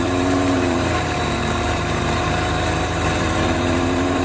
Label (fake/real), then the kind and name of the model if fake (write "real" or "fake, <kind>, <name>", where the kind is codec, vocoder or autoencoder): fake, vocoder, BigVGAN v2